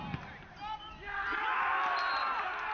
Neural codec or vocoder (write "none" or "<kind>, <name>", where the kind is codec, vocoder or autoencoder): none